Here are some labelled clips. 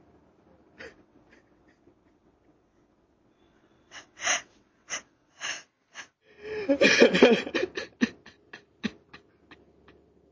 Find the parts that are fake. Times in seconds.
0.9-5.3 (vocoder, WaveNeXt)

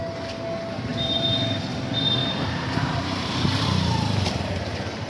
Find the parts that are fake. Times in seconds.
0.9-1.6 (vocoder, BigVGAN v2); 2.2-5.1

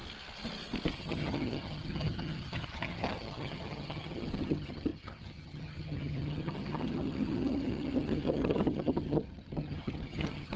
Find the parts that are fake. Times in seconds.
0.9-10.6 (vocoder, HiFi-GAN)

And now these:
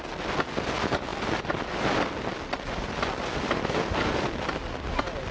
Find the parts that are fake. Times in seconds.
none

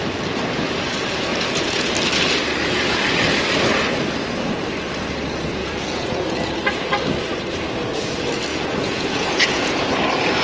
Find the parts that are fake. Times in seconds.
1.3-1.9 (vocoder, Vocos); 5.6-6.5; 8.5-9.9

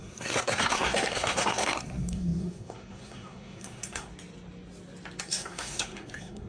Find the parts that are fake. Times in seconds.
0.0-4.1 (codec, SNAC); 5.2-6.5